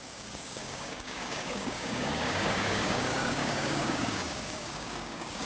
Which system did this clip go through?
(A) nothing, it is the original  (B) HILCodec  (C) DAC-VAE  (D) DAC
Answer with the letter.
D